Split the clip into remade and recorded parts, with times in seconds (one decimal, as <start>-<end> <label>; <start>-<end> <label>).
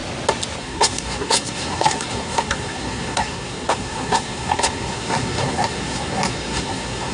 0.0-0.6 recorded; 0.6-7.1 remade